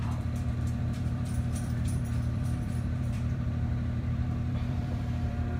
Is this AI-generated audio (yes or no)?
yes